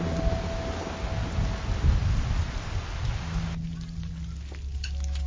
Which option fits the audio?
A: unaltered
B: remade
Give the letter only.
A